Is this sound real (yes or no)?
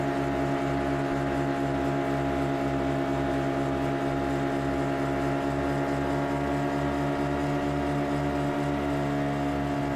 yes